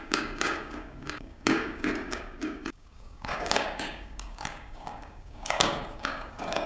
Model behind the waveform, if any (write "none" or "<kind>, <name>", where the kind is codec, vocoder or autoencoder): codec, DAC